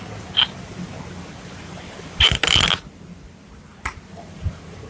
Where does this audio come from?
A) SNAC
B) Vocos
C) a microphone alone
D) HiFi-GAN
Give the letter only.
C